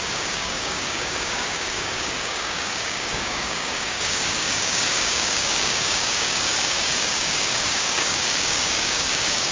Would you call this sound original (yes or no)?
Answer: no